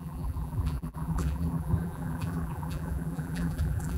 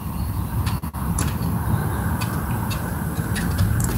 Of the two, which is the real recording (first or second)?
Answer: second